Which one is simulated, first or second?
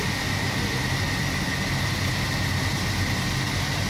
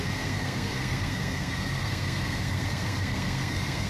second